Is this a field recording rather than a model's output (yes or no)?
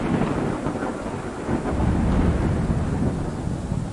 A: yes